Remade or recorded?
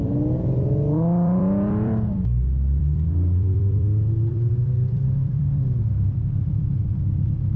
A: remade